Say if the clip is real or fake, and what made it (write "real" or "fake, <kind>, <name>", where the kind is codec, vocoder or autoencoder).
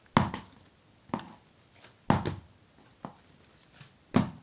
real